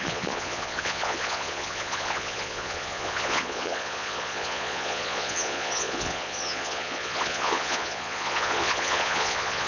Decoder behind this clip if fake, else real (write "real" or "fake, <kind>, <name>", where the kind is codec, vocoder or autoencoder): fake, vocoder, Vocos